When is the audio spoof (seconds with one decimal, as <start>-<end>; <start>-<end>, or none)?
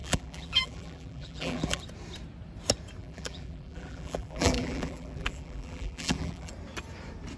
0.0-1.8; 3.0-6.5